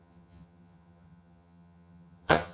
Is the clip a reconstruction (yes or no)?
yes